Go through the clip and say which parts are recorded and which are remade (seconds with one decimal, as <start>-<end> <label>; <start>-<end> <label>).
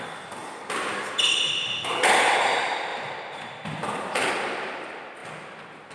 0.0-2.9 recorded; 2.9-4.3 remade; 4.3-5.9 recorded